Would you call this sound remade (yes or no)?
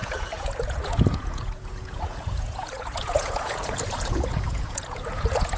yes